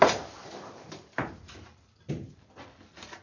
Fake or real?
real